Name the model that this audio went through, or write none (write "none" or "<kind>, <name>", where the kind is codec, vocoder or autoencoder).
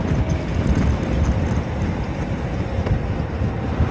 none